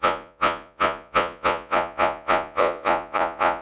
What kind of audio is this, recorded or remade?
remade